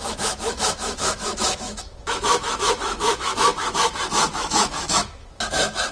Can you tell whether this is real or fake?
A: fake